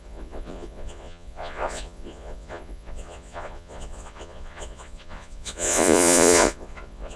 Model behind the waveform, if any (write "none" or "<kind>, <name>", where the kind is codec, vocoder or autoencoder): vocoder, Vocos